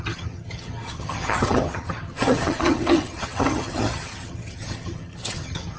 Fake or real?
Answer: fake